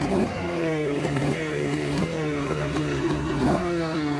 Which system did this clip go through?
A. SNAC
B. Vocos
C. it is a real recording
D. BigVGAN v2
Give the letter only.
A